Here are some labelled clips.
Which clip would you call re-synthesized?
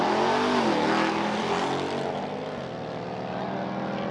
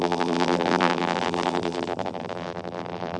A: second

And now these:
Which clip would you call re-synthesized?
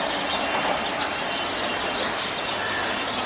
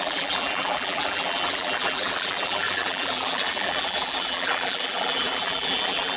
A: second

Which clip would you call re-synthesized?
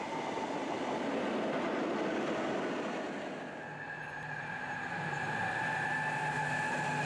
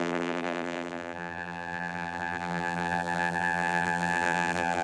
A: second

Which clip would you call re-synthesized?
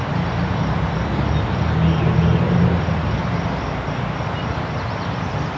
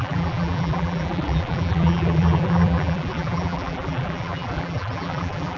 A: second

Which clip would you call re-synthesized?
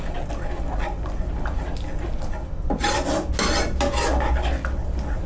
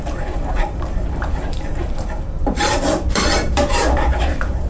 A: second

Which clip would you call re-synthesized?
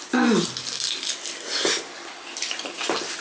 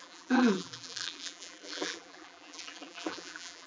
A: second